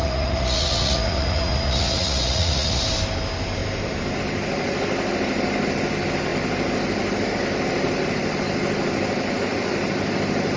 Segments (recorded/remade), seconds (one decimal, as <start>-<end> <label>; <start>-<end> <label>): 0.0-2.8 remade; 2.8-10.6 recorded